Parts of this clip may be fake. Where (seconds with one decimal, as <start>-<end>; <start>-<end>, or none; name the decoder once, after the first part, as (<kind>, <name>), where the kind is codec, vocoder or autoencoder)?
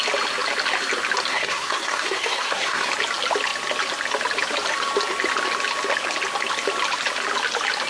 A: 1.3-2.9 (codec, SNAC)